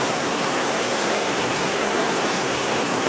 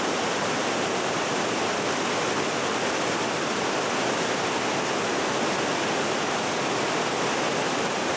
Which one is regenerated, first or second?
first